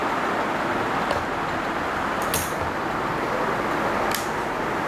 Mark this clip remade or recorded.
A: recorded